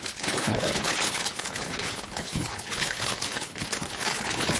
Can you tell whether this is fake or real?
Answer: fake